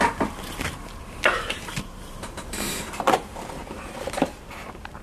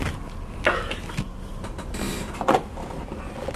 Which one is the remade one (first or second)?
first